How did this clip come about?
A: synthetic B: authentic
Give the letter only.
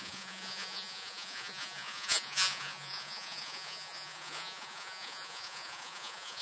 A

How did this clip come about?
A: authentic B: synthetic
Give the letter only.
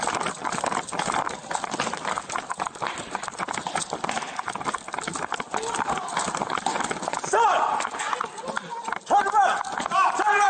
A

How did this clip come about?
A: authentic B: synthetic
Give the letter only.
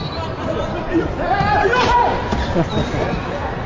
A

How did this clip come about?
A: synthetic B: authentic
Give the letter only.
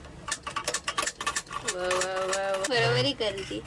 B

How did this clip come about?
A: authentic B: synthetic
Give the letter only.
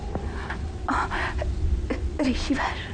A